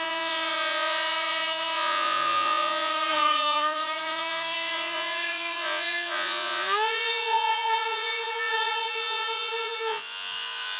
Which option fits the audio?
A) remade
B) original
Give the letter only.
A